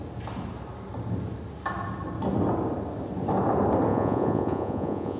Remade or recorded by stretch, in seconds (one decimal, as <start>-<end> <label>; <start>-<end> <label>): 0.0-3.9 recorded; 3.9-5.2 remade